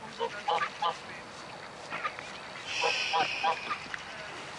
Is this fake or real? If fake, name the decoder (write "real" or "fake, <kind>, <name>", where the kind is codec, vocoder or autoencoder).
real